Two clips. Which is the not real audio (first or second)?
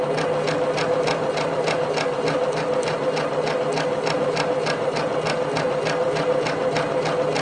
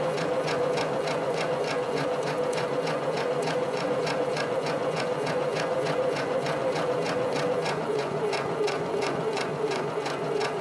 second